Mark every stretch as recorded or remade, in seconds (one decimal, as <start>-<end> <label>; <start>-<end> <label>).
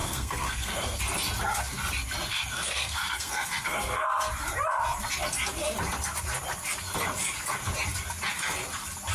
0.0-1.0 remade; 1.0-2.3 recorded; 2.3-4.3 remade; 4.3-9.1 recorded